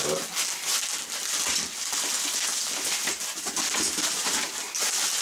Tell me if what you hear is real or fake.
real